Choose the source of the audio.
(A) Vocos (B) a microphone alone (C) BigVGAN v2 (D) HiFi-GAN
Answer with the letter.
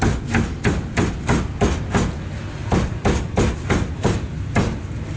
B